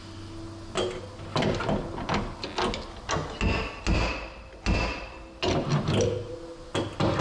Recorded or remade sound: recorded